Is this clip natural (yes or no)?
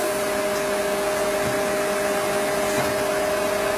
yes